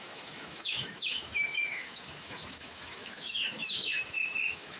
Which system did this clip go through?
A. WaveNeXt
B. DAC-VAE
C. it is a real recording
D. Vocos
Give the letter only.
B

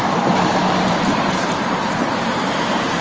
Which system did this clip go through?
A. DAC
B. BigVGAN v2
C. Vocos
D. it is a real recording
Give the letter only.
B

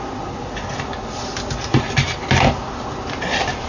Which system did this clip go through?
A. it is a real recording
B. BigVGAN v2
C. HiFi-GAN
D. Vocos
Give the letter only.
A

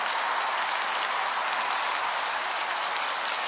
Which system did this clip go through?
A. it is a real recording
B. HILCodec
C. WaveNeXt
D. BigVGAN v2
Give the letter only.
A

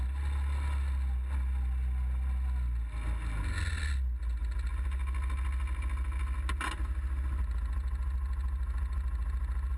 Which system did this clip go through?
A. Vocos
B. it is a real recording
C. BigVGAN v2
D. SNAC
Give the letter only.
B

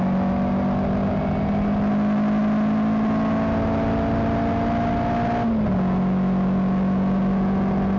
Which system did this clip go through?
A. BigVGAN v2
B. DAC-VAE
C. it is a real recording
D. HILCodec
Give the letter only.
C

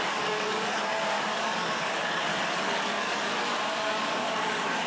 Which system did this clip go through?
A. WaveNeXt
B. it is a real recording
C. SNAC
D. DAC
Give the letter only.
D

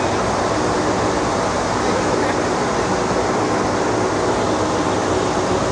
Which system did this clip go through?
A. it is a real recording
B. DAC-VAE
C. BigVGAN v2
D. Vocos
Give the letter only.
A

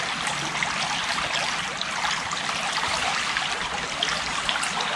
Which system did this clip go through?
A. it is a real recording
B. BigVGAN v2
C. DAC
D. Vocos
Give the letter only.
A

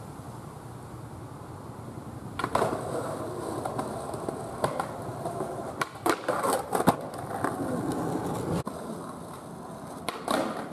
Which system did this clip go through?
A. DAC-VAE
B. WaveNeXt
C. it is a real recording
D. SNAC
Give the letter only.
C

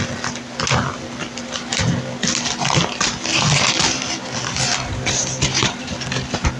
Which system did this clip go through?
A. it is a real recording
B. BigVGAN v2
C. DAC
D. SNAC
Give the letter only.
A